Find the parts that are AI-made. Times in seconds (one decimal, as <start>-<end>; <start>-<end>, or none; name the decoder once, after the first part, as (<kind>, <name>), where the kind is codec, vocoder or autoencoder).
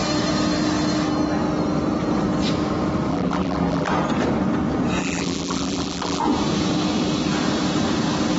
3.1-3.9 (vocoder, BigVGAN v2); 5.0-6.2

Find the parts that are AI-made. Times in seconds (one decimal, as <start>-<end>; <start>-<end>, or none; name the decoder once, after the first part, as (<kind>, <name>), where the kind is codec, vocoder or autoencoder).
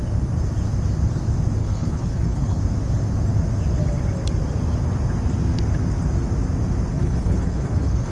1.6-2.6 (codec, HILCodec); 6.9-8.1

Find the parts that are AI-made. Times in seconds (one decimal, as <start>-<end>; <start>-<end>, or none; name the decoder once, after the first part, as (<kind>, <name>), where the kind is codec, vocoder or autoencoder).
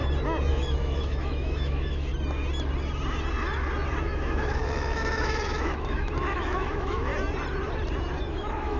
0.5-2.1 (autoencoder, DAC-VAE); 4.0-7.1; 8.2-8.8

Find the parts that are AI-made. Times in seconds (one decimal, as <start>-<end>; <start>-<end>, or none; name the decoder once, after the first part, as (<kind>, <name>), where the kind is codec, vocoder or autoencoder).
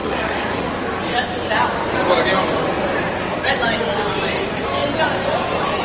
0.0-0.7 (vocoder, Vocos)